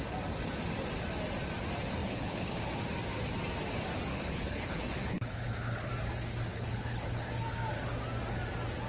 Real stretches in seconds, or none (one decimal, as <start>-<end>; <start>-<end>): 0.0-2.0; 2.6-4.1; 5.9-6.5; 7.3-8.9